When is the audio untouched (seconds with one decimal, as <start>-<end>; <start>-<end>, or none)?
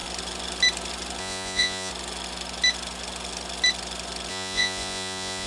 0.0-1.2; 1.9-4.3